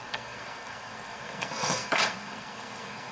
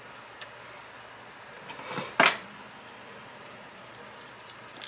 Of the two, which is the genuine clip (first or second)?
second